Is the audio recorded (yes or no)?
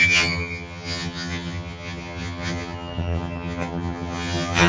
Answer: no